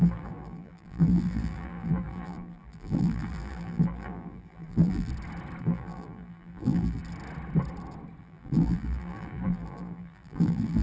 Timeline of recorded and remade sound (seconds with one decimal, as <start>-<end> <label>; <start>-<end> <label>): 0.0-5.1 remade; 5.1-5.6 recorded; 5.6-7.0 remade; 7.0-8.2 recorded; 8.2-10.8 remade